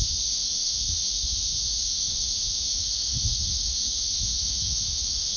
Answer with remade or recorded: remade